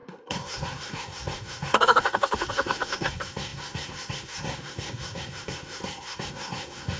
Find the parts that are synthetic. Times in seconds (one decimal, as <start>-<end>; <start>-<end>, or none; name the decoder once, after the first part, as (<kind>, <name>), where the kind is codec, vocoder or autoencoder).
0.0-7.0 (codec, SNAC)